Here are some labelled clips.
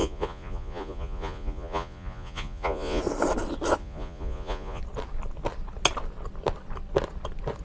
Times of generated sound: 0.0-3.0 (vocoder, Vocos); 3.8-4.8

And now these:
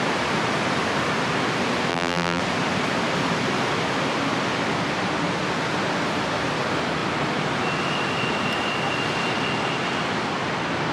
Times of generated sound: 1.9-2.4 (vocoder, BigVGAN v2)

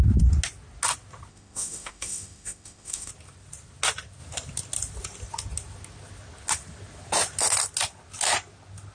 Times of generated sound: 1.3-3.1 (autoencoder, DAC-VAE)

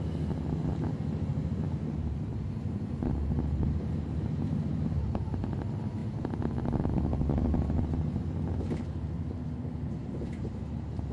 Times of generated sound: 1.3-5.6 (vocoder, BigVGAN v2); 6.0-8.2; 10.0-10.6

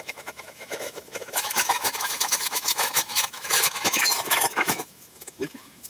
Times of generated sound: 0.0-5.9 (autoencoder, DAC-VAE)

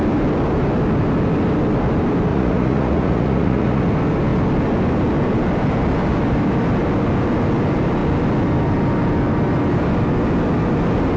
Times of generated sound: 2.3-3.8 (vocoder, Vocos)

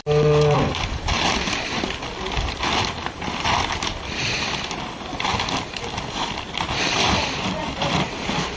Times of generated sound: 0.0-5.3 (vocoder, BigVGAN v2); 6.1-8.6